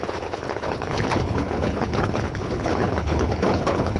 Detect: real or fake fake